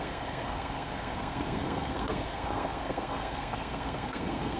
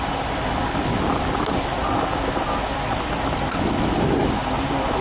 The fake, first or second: first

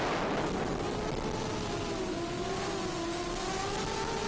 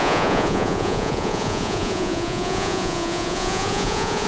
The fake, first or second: second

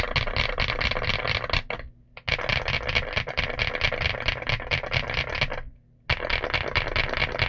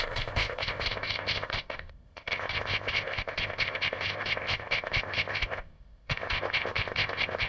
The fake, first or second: second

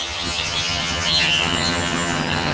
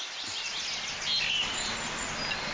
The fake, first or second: first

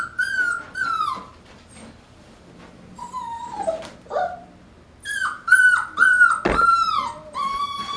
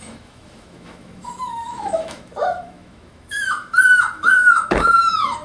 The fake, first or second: second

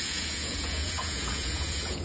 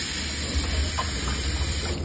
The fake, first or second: first